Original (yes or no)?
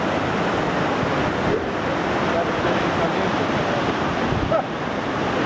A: yes